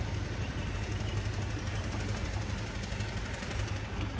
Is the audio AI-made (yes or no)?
no